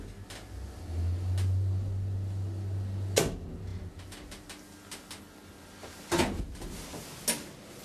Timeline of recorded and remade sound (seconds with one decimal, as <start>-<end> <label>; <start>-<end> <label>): 0.0-7.8 recorded